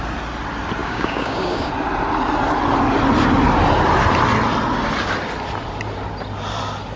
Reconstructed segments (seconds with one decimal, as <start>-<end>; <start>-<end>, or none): 0.8-1.7